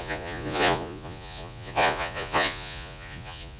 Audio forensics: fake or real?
fake